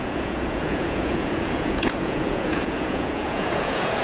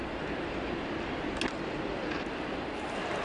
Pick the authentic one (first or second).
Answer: second